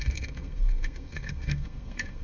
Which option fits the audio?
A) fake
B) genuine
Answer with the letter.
A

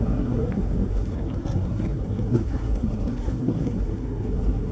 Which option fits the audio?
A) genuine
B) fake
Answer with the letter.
B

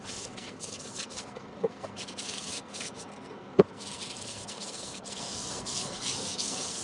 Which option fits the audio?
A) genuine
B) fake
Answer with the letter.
B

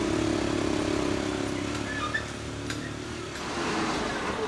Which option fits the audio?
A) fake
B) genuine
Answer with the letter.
B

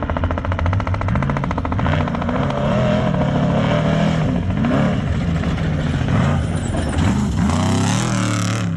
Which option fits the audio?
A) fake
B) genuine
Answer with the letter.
B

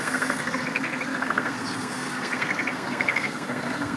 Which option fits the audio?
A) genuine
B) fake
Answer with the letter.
B